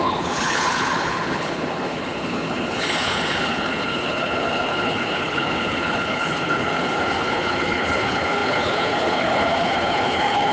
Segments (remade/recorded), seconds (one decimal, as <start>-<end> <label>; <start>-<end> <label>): 0.0-10.5 remade